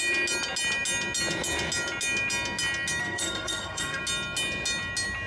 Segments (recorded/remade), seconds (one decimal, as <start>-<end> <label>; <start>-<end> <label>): 0.0-3.0 recorded; 3.0-4.0 remade; 4.0-5.3 recorded